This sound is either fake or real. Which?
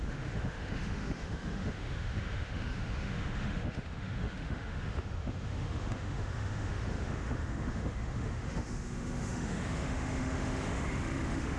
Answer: fake